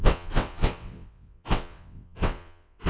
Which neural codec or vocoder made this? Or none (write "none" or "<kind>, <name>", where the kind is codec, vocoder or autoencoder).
vocoder, WaveNeXt